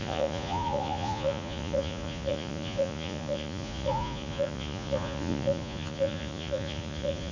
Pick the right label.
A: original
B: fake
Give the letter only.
B